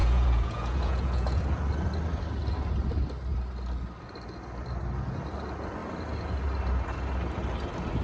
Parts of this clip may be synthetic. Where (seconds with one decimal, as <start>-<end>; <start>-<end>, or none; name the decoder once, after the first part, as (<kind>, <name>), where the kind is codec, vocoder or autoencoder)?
0.0-1.4 (vocoder, Vocos)